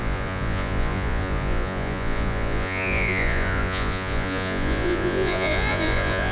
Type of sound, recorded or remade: remade